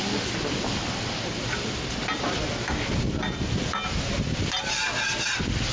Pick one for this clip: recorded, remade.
recorded